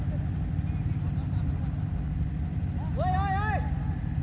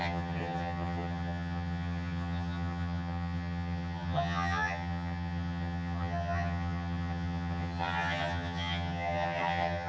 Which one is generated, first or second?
second